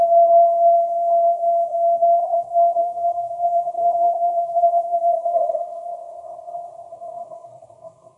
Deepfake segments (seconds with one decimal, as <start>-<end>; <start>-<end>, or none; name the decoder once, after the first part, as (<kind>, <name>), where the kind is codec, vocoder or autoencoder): 0.0-5.9 (codec, SNAC); 6.9-8.2